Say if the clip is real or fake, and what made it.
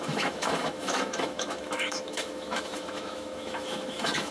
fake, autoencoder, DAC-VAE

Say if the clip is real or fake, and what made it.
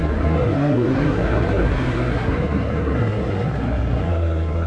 fake, codec, SNAC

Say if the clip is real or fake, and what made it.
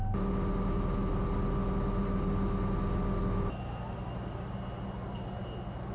real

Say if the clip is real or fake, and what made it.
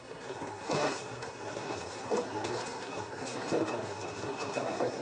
fake, codec, SNAC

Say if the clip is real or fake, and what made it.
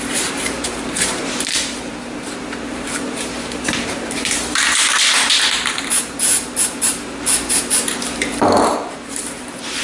fake, vocoder, BigVGAN v2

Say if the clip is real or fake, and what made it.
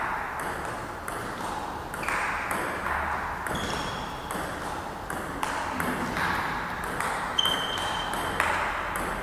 real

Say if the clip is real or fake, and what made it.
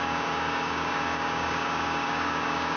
fake, codec, DAC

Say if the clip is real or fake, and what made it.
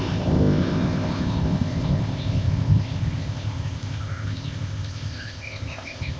fake, codec, ZipCodec